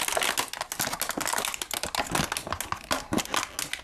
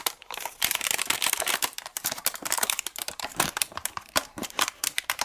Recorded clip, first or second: first